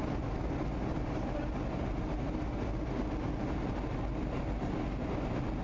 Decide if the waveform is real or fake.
real